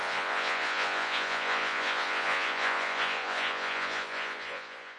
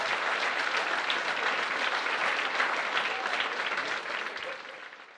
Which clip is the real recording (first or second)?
second